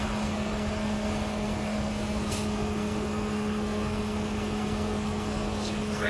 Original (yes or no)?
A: no